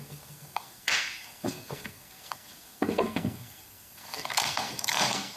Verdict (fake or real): fake